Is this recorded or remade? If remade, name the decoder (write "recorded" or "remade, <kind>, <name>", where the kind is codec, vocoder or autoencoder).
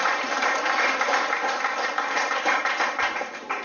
remade, vocoder, BigVGAN v2